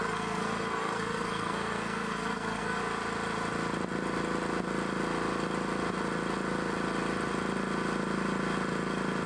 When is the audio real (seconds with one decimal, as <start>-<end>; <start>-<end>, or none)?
2.8-9.3